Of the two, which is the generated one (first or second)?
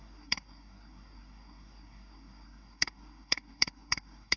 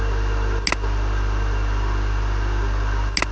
first